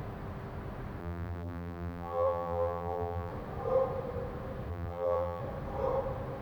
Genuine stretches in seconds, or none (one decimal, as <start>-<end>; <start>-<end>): 0.0-1.0; 3.3-4.7; 5.4-6.4